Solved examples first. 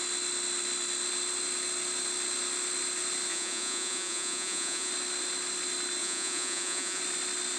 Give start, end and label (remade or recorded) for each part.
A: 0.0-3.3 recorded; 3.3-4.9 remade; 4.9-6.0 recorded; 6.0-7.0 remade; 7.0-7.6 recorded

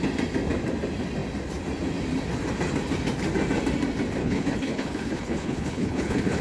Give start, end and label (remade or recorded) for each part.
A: 0.0-4.2 recorded; 4.2-6.4 remade

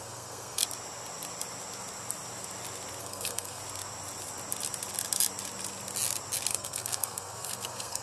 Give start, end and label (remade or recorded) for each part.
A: 0.0-0.6 remade; 0.6-3.0 recorded; 3.0-3.6 remade; 3.6-6.5 recorded; 6.5-8.0 remade

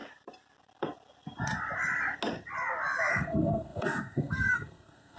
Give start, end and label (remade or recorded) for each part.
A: 0.0-3.1 recorded; 3.1-5.2 remade

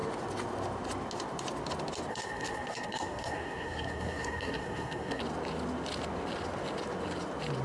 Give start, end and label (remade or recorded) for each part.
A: 0.0-2.1 recorded; 2.1-5.2 remade; 5.2-7.6 recorded

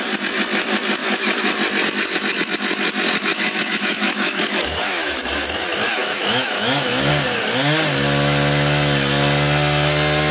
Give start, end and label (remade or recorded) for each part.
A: 0.0-1.0 recorded; 1.0-1.5 remade; 1.5-3.3 recorded; 3.3-5.2 remade; 5.2-6.0 recorded; 6.0-7.1 remade; 7.1-10.3 recorded